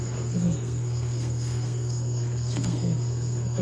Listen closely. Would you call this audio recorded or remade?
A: remade